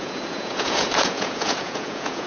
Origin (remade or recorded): remade